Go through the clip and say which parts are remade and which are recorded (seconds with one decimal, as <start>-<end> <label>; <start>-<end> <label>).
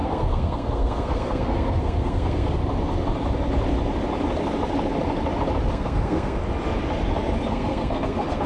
0.0-2.6 remade; 2.6-5.7 recorded; 5.7-6.4 remade; 6.4-7.5 recorded; 7.5-8.5 remade